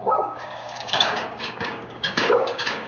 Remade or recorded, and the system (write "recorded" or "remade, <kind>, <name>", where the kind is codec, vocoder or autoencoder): remade, codec, DAC